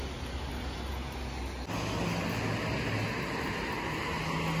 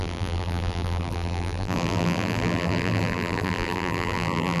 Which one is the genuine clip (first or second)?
first